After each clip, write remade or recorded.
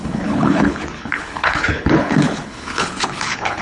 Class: remade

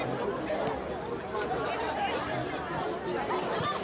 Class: recorded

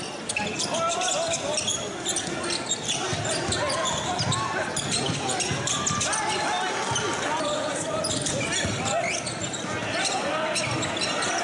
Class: recorded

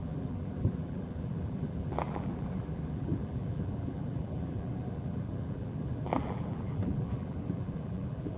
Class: remade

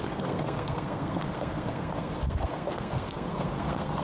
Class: remade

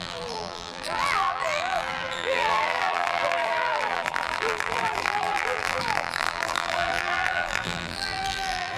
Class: remade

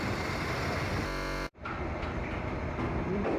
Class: remade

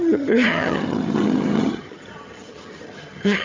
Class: remade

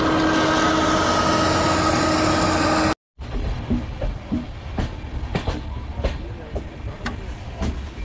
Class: recorded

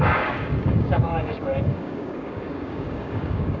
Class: remade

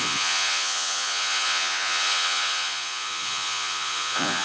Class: remade